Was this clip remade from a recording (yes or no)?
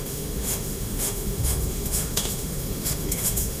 yes